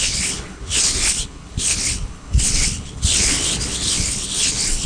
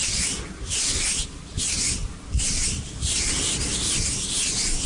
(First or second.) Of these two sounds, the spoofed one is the first